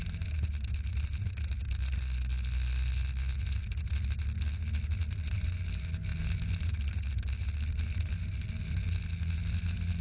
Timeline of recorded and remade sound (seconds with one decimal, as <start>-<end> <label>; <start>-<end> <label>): 0.0-10.0 recorded